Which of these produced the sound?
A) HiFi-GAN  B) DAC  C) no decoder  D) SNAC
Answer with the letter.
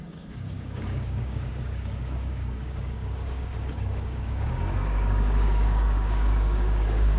B